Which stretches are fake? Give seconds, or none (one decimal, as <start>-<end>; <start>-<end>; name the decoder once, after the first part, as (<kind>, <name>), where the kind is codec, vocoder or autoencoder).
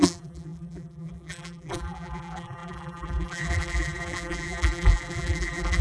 0.0-5.8 (vocoder, BigVGAN v2)